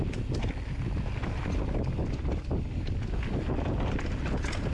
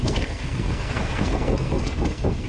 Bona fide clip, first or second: first